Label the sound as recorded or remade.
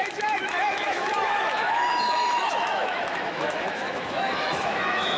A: remade